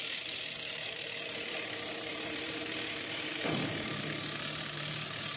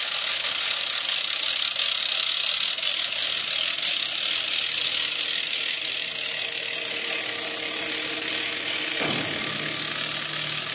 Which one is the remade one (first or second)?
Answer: first